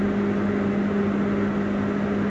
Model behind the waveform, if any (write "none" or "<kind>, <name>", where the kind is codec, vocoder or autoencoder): none